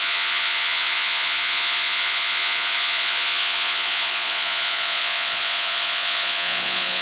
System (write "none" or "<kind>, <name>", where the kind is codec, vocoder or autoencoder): vocoder, Vocos